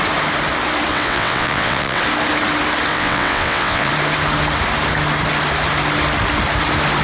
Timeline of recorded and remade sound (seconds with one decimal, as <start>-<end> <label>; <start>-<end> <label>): 0.0-0.9 recorded; 0.9-2.0 remade; 2.0-2.9 recorded; 2.9-3.9 remade; 3.9-7.0 recorded